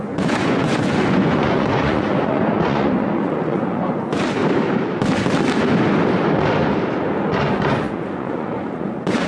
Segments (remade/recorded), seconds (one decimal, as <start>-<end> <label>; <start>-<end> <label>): 0.0-4.4 remade; 4.4-7.2 recorded; 7.2-9.3 remade